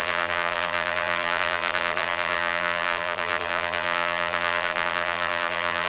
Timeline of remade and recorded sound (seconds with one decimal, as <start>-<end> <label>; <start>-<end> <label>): 0.0-5.9 remade